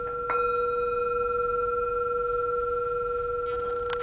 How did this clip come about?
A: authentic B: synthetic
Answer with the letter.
A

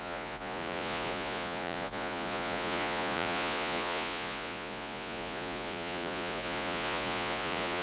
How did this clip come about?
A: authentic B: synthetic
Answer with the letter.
B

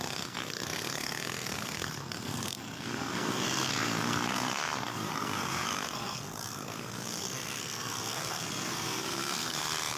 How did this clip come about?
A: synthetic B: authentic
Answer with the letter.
A